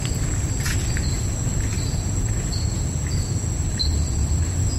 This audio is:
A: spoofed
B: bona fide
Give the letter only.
B